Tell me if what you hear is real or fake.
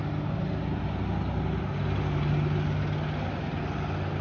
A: real